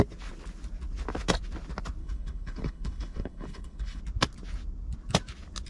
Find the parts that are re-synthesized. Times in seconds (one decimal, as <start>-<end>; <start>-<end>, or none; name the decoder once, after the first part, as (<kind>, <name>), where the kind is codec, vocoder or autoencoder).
2.0-4.0 (codec, HILCodec)